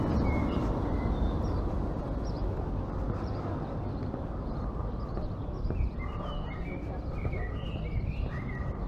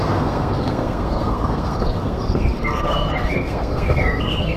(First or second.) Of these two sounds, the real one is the first